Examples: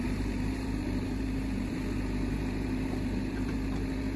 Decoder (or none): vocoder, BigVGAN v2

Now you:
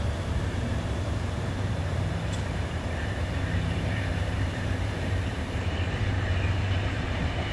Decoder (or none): vocoder, BigVGAN v2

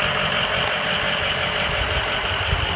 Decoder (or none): none